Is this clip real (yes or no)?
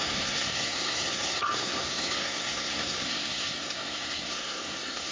no